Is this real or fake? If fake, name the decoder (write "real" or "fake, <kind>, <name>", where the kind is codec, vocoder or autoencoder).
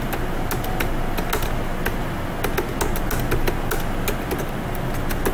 real